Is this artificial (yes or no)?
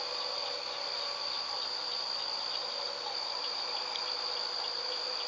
no